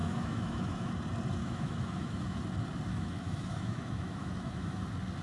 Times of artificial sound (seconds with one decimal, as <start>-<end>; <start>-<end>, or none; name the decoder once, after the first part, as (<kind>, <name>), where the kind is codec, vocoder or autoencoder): 0.0-0.9 (autoencoder, DAC-VAE); 1.4-2.4; 2.9-4.8